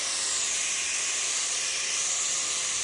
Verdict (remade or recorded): recorded